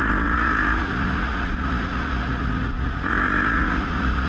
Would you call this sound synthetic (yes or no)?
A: yes